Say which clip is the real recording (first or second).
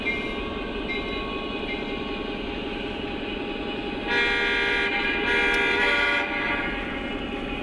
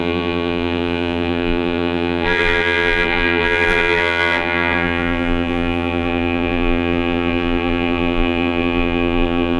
first